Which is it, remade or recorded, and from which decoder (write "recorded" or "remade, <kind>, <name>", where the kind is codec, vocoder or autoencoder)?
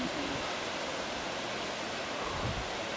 recorded